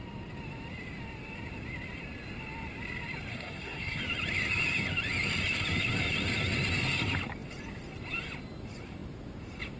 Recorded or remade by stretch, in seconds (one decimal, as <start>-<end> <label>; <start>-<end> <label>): 0.0-3.3 recorded; 3.3-4.0 remade; 4.0-9.8 recorded